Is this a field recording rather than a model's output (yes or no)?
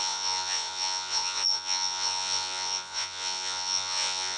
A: no